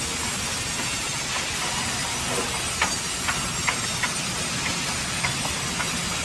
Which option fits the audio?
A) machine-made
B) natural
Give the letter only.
B